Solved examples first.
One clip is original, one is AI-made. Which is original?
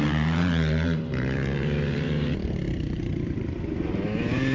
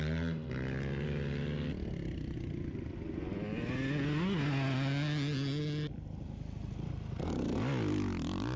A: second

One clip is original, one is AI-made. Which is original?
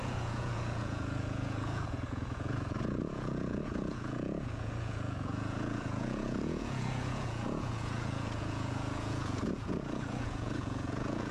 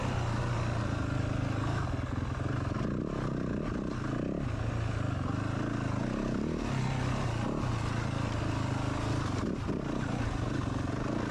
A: second